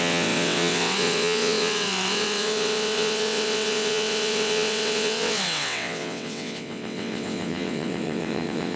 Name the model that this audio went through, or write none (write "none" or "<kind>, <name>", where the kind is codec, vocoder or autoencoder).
vocoder, WaveNeXt